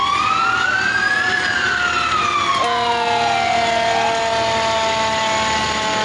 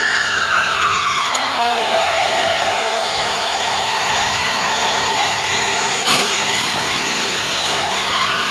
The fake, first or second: second